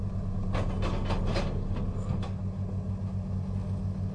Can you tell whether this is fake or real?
real